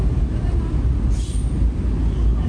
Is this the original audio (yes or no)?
yes